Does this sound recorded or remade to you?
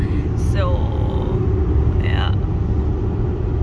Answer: recorded